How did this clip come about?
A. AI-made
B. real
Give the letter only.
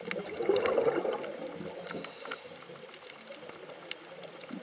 B